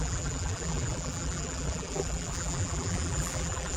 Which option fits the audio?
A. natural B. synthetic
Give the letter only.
B